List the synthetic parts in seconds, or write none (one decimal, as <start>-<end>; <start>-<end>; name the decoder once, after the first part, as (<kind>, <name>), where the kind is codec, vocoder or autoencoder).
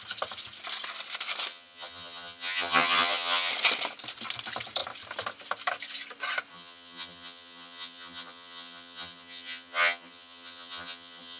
1.5-3.5 (vocoder, HiFi-GAN); 6.5-11.4